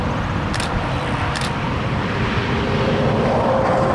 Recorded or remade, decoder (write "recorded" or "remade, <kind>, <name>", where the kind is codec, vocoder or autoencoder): remade, vocoder, BigVGAN v2